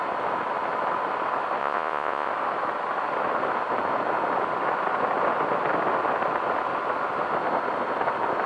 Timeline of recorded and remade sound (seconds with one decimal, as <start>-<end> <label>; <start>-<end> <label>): 0.0-1.6 recorded; 1.6-2.3 remade; 2.3-8.5 recorded

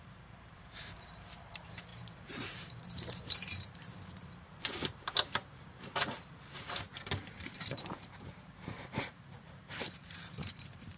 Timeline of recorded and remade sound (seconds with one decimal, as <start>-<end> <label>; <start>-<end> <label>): 0.0-11.0 remade

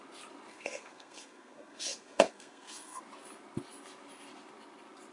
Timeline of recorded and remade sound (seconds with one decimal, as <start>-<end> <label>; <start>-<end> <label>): 0.0-0.5 recorded; 0.5-3.0 remade; 3.0-5.1 recorded

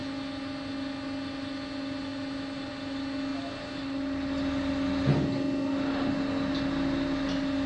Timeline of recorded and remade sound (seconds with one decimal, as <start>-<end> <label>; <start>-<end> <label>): 0.0-7.7 recorded

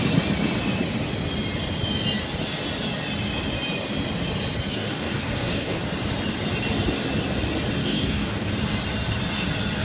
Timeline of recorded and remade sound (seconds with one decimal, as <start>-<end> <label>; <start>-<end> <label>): 0.0-4.7 recorded; 4.7-5.8 remade; 5.8-7.8 recorded; 7.8-8.5 remade; 8.5-9.8 recorded

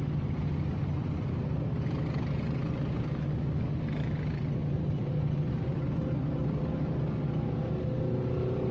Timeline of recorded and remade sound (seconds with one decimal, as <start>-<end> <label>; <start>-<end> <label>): 0.0-4.6 recorded; 4.6-7.1 remade; 7.1-8.7 recorded

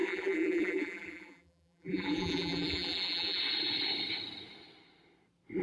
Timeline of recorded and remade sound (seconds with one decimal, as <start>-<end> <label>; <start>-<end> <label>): 0.0-3.4 remade; 3.4-5.6 recorded

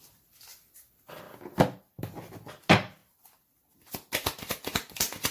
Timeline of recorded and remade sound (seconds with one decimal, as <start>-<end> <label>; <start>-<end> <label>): 0.0-5.3 recorded